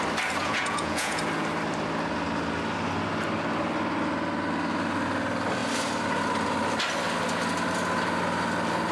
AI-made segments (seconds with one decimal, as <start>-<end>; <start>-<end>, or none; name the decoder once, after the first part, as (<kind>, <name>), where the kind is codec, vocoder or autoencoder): 0.4-1.2 (vocoder, Vocos)